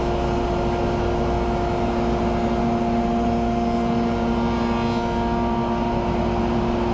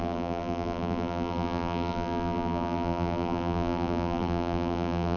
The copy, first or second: second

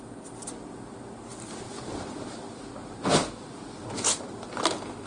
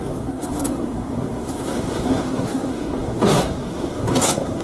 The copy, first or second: second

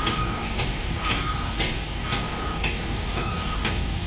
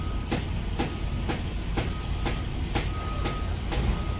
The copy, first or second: first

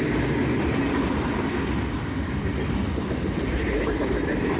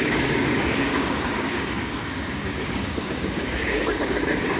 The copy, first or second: second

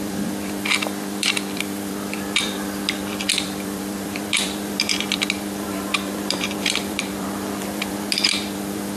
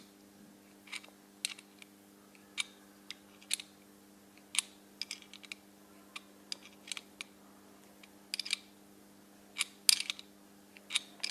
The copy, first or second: first